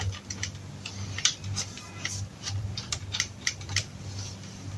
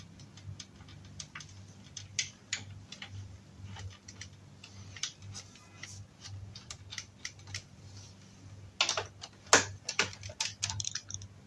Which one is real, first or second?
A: second